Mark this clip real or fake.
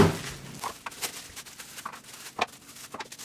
real